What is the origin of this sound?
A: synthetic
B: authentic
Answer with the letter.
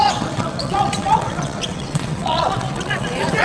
A